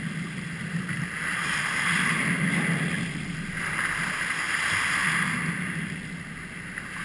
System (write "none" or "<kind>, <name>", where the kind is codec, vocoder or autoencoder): none